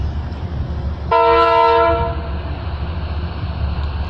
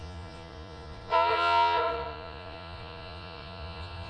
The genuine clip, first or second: first